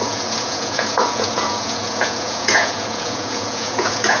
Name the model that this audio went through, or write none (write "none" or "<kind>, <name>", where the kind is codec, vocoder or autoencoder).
vocoder, Vocos